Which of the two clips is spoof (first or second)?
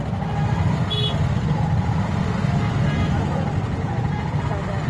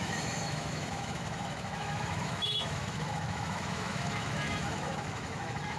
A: second